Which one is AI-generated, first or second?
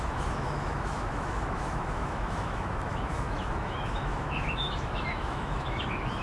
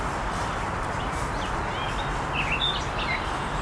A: first